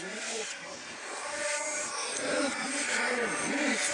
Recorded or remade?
recorded